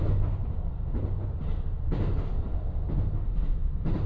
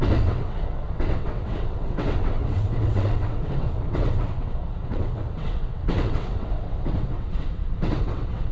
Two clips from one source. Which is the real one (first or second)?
first